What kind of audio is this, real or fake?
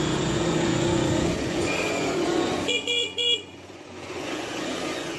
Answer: fake